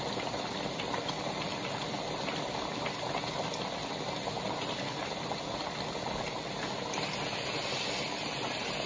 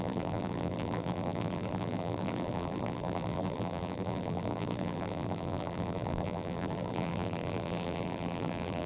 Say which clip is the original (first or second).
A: first